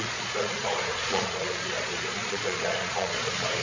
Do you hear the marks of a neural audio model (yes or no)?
yes